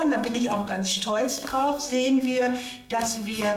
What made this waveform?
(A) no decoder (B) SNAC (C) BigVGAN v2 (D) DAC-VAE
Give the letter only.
B